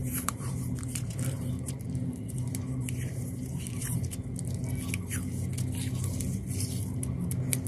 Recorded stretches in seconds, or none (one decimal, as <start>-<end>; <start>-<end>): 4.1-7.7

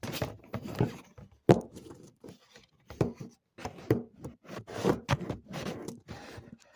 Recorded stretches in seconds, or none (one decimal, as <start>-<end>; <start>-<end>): none

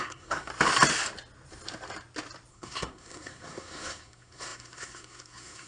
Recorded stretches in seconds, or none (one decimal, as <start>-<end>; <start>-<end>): 0.5-2.5

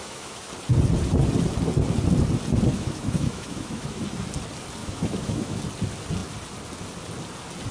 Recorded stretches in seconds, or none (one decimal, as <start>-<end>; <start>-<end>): 0.5-2.7; 4.0-4.8; 5.6-7.7

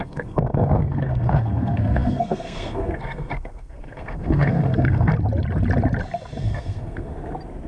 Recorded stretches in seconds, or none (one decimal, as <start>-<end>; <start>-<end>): 5.1-6.4; 7.1-7.7